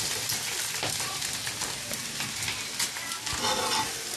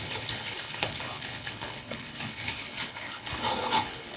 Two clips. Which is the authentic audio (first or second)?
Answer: first